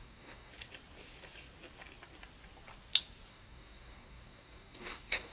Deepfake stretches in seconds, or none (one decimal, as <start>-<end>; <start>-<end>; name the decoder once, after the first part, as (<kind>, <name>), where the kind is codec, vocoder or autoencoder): 0.0-0.5 (codec, DAC); 3.3-5.3